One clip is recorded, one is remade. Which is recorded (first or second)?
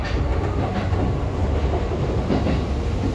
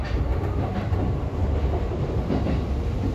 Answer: first